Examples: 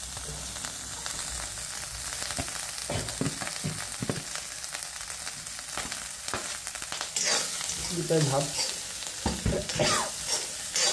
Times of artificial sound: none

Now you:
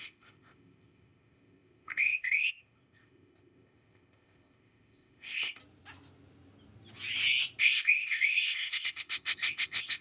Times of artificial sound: 0.0-5.6; 7.6-10.0

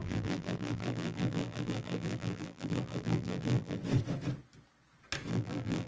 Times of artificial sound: 0.0-3.8; 5.3-5.9

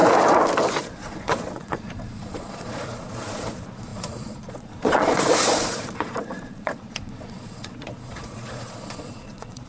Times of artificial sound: 0.7-9.7